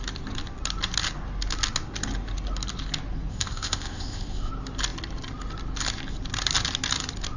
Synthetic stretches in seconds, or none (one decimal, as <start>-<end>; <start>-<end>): 3.3-4.5